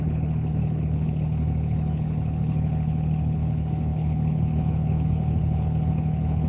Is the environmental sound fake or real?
fake